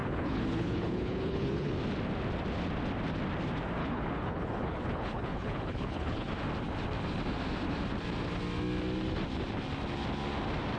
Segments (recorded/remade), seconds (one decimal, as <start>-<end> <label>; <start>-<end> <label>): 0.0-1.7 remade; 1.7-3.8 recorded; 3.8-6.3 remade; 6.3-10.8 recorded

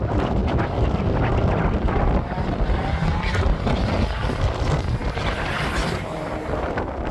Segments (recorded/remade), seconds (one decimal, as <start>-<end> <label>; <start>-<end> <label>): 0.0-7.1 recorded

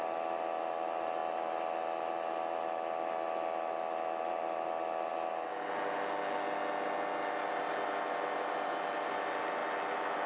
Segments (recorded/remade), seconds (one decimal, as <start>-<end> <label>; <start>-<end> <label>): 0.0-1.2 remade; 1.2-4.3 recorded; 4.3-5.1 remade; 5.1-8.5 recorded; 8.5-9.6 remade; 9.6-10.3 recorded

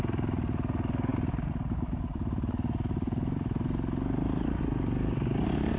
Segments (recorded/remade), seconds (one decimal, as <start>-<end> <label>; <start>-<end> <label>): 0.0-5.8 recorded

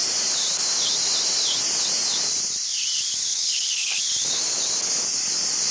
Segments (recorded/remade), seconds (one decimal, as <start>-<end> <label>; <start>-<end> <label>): 0.0-3.3 recorded; 3.3-4.0 remade; 4.0-5.7 recorded

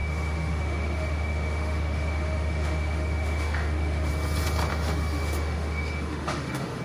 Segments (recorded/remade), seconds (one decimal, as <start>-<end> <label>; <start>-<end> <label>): 0.0-4.1 remade; 4.1-4.7 recorded; 4.7-6.8 remade